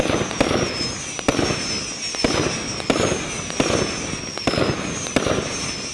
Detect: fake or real real